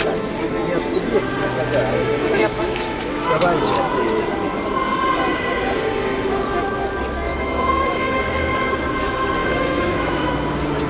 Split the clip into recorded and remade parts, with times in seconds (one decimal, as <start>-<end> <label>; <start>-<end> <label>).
0.0-2.2 recorded; 2.2-3.6 remade; 3.6-7.3 recorded; 7.3-8.2 remade; 8.2-9.4 recorded; 9.4-10.3 remade; 10.3-10.9 recorded